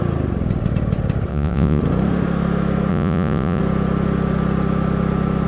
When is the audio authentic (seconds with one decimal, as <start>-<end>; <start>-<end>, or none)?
0.0-1.3; 1.8-2.9; 3.6-5.5